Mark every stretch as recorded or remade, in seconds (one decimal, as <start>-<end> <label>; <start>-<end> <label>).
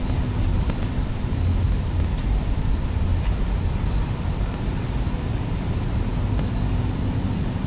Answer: 0.0-7.7 recorded